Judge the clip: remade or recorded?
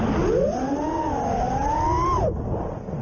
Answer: recorded